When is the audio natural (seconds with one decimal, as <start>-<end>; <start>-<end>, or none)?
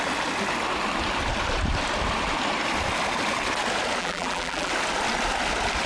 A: 0.0-4.0; 4.7-5.9